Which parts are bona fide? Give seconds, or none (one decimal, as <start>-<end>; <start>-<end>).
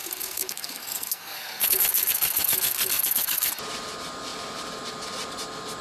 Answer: 3.5-5.8